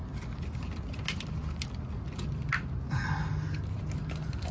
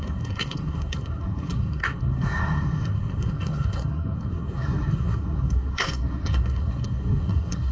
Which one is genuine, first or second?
first